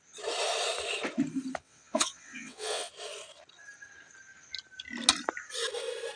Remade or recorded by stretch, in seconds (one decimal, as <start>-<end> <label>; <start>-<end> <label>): 0.0-1.6 recorded; 1.6-2.9 remade; 2.9-6.2 recorded